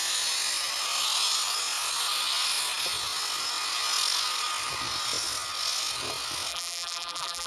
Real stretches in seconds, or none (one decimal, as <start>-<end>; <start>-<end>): 0.0-6.5